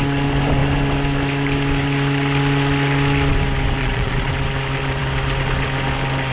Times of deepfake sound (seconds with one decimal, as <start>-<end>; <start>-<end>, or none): 3.8-4.3